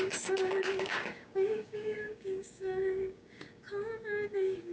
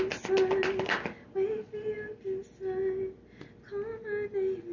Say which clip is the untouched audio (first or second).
second